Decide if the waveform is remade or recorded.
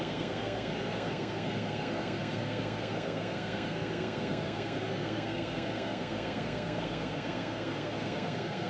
remade